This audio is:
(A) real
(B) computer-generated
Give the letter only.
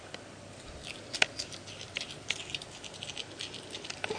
A